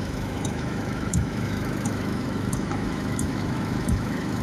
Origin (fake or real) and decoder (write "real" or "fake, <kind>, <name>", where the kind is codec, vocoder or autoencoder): fake, autoencoder, DAC-VAE